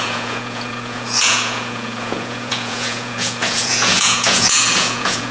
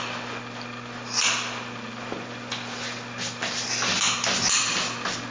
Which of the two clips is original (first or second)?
second